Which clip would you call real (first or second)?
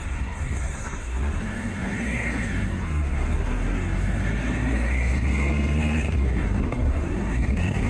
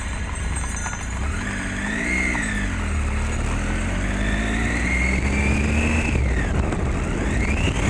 second